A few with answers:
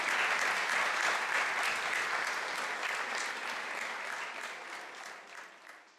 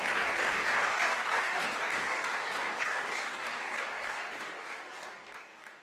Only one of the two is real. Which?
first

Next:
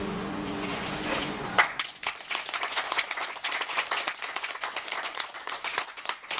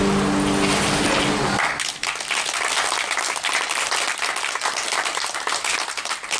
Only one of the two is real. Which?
second